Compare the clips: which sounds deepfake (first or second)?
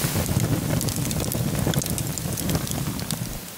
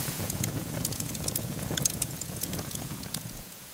second